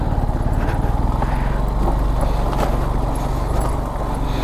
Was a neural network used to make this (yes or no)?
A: no